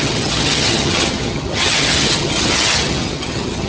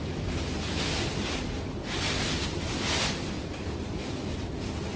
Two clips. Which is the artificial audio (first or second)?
first